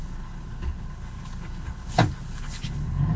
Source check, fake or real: fake